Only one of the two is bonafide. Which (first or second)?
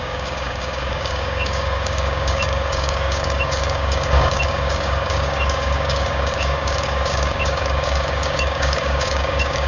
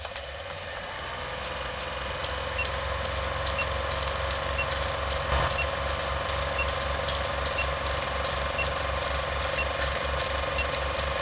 second